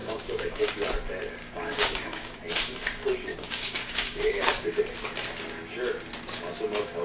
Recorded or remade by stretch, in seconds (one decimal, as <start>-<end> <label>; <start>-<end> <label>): 0.0-0.7 remade; 0.7-1.4 recorded; 1.4-2.4 remade; 2.4-3.3 recorded; 3.3-4.8 remade; 4.8-7.0 recorded